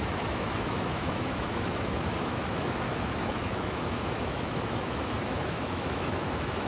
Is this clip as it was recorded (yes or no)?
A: no